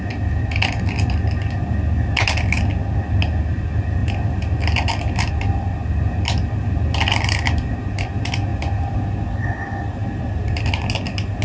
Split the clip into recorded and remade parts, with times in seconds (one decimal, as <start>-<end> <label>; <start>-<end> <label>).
0.0-11.4 recorded